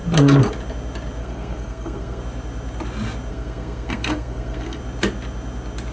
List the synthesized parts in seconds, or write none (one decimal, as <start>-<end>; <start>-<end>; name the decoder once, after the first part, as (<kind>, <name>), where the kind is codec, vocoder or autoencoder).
1.2-2.2 (codec, SNAC); 3.3-4.8